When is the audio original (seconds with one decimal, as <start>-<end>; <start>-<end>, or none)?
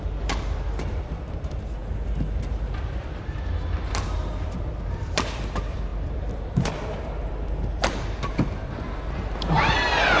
1.8-2.7